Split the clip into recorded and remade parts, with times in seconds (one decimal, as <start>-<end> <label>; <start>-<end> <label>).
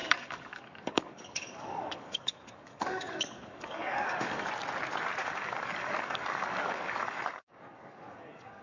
0.0-4.5 remade; 4.5-5.2 recorded; 5.2-8.6 remade